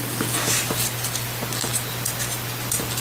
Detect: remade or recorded recorded